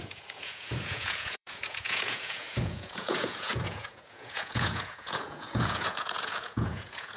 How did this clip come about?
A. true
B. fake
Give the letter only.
B